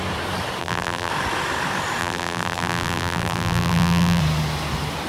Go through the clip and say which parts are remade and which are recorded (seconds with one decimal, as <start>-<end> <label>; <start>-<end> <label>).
0.0-0.6 recorded; 0.6-1.1 remade; 1.1-2.0 recorded; 2.0-4.2 remade; 4.2-5.1 recorded